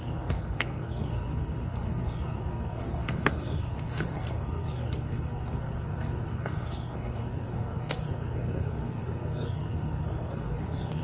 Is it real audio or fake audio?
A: fake